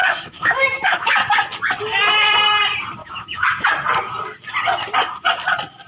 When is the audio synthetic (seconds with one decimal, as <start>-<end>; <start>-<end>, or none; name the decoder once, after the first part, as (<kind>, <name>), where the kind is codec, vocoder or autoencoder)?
0.0-1.1 (autoencoder, DAC-VAE); 3.0-3.7

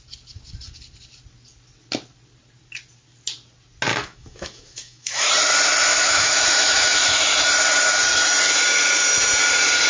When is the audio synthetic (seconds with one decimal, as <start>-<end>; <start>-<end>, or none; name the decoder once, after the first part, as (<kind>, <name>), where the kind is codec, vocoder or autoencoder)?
3.9-5.3 (autoencoder, DAC-VAE); 5.9-7.2